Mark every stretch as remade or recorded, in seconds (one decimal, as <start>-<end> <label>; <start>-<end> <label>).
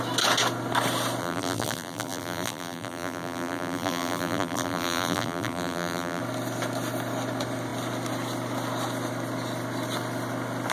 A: 0.0-1.2 recorded; 1.2-6.2 remade; 6.2-10.7 recorded